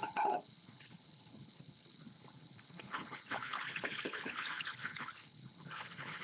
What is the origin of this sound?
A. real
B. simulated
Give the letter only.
B